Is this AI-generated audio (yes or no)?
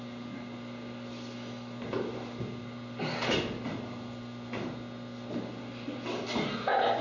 no